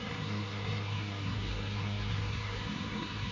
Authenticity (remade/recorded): remade